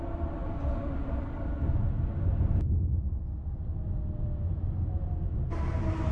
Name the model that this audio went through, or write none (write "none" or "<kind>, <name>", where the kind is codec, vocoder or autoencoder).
none